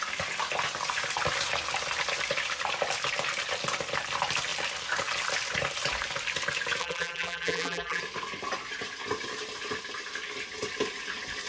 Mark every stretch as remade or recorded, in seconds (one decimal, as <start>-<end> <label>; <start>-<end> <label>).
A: 0.0-6.8 recorded; 6.8-8.0 remade; 8.0-11.5 recorded